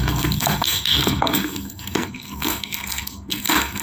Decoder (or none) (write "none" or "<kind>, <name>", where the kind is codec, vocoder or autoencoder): codec, SNAC